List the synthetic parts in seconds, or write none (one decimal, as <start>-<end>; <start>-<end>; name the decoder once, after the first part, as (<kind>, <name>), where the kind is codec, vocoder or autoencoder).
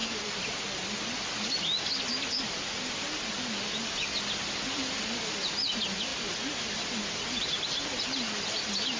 none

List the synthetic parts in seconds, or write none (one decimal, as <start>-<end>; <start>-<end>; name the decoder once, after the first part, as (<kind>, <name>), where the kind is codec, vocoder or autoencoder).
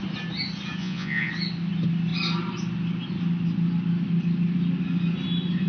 0.8-1.3 (vocoder, Vocos)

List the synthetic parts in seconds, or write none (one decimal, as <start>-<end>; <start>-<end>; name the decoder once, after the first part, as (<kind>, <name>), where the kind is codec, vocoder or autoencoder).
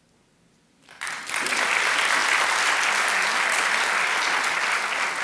none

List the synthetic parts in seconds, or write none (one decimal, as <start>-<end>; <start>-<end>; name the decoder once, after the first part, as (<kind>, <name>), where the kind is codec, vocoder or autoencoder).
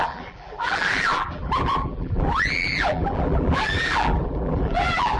0.0-5.2 (vocoder, BigVGAN v2)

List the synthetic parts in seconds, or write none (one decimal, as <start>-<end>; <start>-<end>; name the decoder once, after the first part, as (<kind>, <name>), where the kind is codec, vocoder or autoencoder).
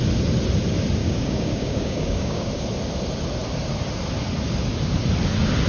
1.0-2.5 (codec, DAC)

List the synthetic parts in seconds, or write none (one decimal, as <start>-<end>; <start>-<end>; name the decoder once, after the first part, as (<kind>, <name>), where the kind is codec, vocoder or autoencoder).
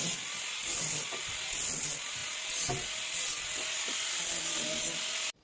none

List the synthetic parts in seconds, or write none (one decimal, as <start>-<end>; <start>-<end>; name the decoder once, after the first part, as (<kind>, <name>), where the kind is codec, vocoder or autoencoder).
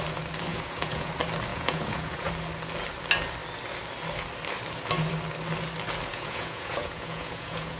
0.5-1.1 (vocoder, Vocos); 1.5-2.3; 6.1-7.8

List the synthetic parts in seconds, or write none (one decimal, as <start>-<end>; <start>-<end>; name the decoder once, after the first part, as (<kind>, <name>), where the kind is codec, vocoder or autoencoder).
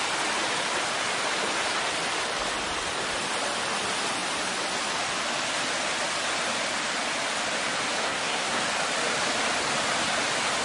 8.0-8.6 (codec, SNAC)